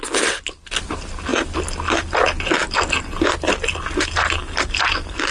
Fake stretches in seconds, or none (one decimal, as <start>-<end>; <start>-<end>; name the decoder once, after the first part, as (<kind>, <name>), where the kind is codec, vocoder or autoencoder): none

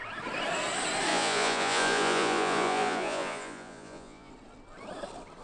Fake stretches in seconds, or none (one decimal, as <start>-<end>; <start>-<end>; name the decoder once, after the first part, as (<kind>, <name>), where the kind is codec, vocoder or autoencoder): 1.1-4.3 (vocoder, Vocos)